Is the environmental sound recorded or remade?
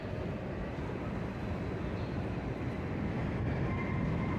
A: remade